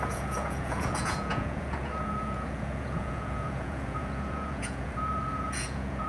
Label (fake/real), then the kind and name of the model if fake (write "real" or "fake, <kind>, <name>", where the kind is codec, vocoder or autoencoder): fake, vocoder, Vocos